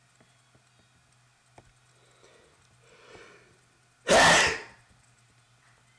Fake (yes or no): no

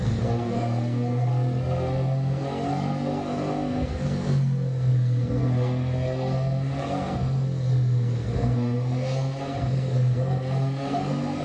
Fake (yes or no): yes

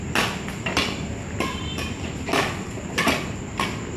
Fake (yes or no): no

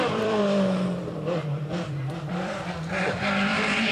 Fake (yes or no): yes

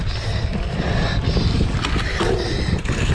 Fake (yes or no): no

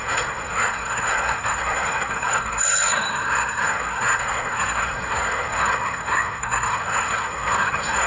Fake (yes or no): yes